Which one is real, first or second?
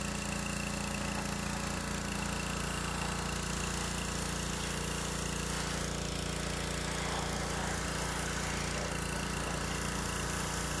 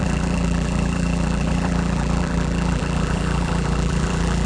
first